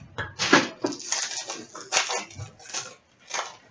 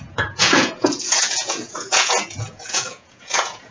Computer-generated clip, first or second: second